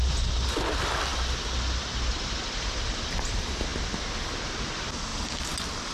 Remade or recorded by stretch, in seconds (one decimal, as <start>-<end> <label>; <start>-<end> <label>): 0.0-5.9 recorded